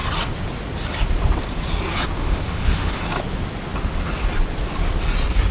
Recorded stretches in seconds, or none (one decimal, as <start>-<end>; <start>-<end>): 0.0-2.2; 3.0-5.5